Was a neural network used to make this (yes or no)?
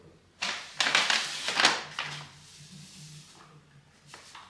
no